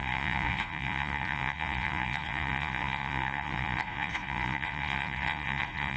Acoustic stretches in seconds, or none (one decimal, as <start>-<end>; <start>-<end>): none

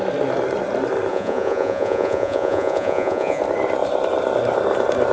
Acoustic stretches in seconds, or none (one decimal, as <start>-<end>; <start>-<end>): 0.0-1.1; 3.4-5.1

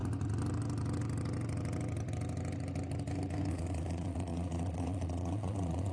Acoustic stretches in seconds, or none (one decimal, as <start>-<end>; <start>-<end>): 0.0-3.5

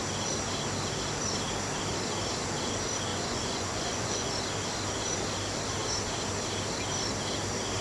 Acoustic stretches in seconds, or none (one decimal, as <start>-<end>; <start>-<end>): 0.0-3.1; 4.3-7.8

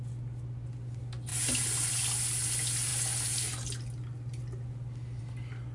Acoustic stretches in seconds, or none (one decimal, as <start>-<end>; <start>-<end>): 0.0-5.7